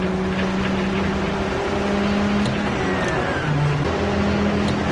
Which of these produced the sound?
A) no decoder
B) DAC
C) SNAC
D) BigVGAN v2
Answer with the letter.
A